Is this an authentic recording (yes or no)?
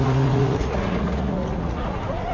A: no